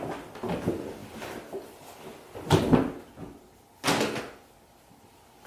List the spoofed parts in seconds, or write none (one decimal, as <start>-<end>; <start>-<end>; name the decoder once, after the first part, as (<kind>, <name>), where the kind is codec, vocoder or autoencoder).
none